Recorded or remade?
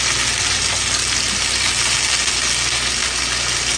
recorded